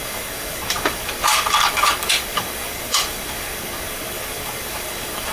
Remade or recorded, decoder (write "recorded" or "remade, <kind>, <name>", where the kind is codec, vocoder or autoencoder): remade, codec, DAC